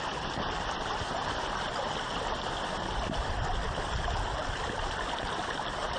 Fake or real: fake